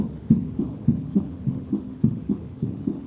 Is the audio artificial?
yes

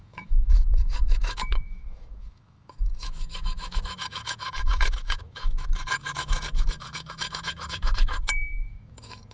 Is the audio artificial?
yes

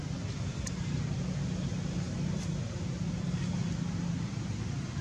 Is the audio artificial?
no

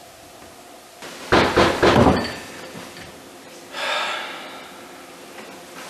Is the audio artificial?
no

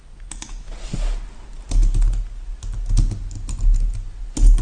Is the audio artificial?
no